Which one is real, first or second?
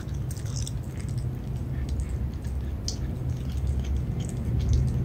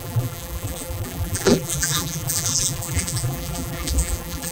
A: first